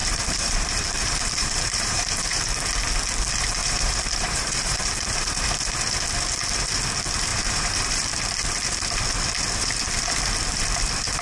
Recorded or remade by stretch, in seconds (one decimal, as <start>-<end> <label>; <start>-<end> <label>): 0.0-2.4 remade; 2.4-3.6 recorded; 3.6-5.5 remade; 5.5-7.3 recorded; 7.3-8.1 remade; 8.1-11.2 recorded